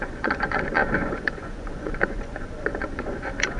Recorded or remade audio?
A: remade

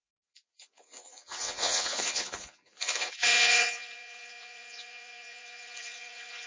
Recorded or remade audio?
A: remade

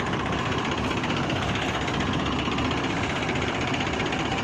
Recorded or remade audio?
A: recorded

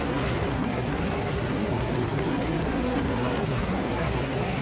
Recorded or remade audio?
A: remade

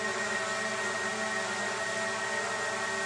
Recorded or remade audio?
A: recorded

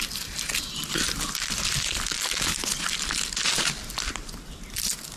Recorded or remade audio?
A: recorded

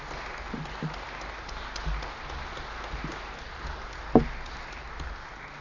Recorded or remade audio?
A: recorded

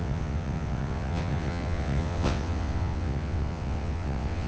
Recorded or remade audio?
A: remade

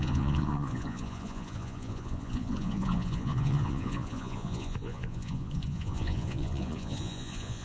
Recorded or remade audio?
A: remade